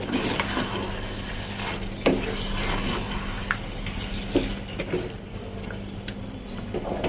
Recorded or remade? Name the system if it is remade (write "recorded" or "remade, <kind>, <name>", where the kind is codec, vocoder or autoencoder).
recorded